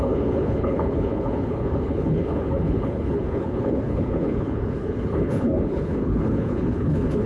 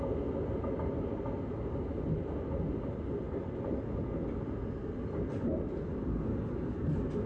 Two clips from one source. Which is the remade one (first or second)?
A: first